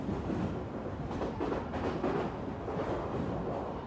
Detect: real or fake real